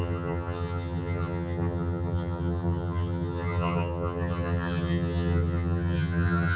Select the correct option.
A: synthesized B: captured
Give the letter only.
A